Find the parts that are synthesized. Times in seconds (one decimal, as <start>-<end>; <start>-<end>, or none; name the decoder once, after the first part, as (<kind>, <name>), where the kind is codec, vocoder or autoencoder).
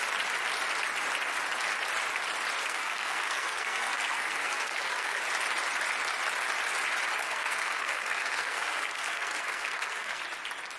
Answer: 2.6-5.2 (codec, SNAC); 7.2-10.2